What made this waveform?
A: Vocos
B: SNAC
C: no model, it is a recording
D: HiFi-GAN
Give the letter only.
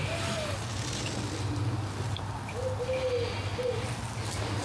C